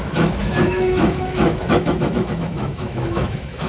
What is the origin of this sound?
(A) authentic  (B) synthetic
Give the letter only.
B